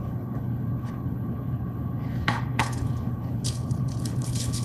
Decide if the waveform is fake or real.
fake